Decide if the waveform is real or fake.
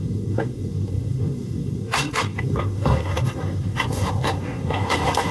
fake